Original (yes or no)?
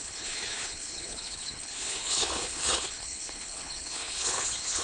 no